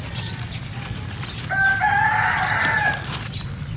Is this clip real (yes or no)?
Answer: yes